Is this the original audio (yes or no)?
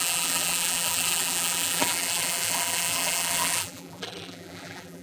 no